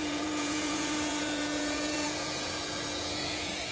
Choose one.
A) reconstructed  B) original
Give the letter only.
A